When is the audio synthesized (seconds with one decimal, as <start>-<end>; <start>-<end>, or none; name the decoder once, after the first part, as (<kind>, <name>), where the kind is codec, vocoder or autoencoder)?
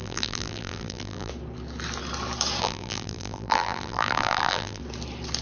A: 0.0-1.3 (vocoder, BigVGAN v2); 2.6-4.8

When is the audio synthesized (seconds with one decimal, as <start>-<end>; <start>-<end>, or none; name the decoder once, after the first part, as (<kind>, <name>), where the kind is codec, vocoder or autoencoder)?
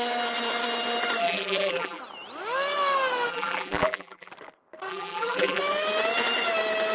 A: 1.2-2.0 (vocoder, BigVGAN v2); 3.3-4.3; 4.9-5.6